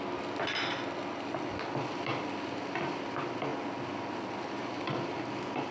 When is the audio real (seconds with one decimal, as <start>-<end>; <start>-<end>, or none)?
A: 0.0-5.7